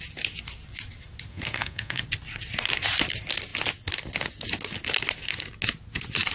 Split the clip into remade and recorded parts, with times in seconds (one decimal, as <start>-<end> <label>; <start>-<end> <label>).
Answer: 0.0-1.3 recorded; 1.3-2.0 remade; 2.0-6.3 recorded